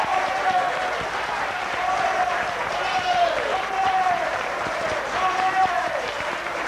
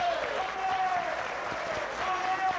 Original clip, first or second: second